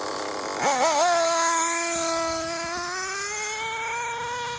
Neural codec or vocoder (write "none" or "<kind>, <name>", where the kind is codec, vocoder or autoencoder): none